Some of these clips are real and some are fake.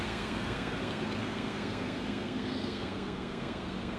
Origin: fake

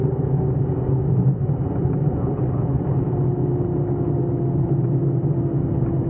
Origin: real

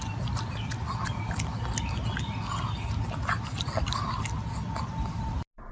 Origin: real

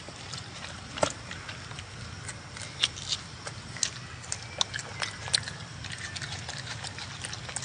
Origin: real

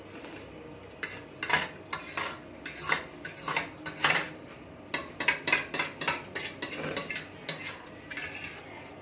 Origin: real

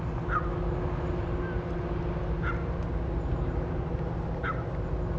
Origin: real